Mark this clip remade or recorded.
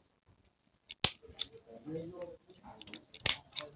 recorded